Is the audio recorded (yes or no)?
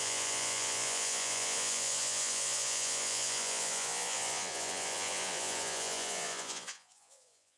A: no